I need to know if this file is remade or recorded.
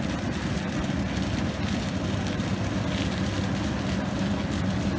recorded